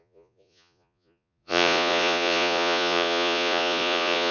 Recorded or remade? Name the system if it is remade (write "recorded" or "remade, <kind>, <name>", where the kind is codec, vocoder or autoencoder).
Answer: remade, vocoder, Vocos